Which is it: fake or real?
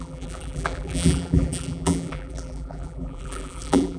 fake